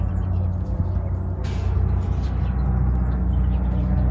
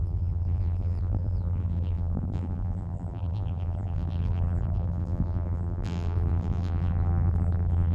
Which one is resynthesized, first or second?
second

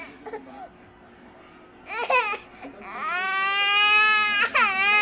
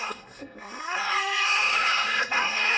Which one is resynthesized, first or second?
second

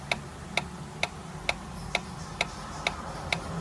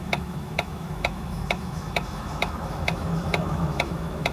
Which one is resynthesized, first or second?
second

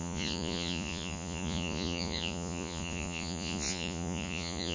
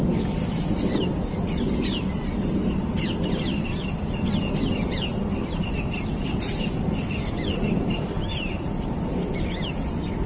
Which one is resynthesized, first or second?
first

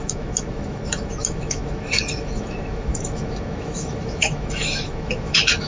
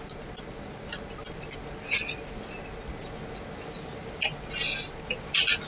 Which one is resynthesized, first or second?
first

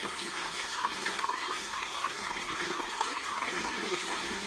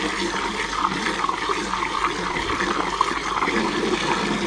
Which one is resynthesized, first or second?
first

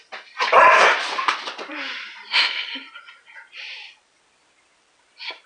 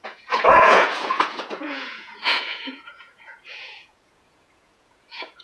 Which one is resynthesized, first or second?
second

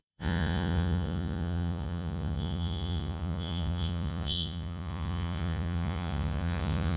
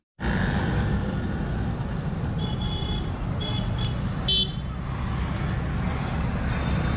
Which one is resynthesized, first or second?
first